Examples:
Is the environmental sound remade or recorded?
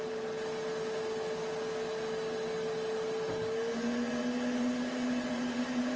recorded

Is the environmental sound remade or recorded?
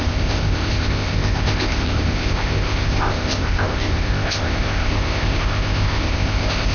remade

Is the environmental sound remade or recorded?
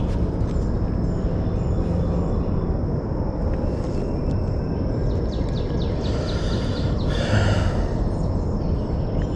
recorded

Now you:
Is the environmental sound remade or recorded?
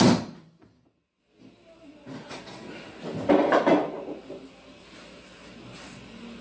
recorded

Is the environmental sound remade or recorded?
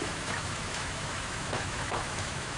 remade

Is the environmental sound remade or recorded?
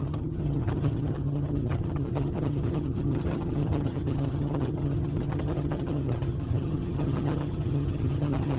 remade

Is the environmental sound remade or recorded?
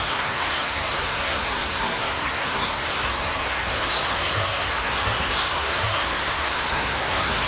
remade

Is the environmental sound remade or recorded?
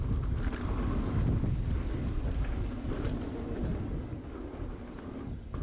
recorded